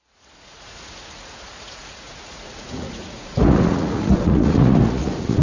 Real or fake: fake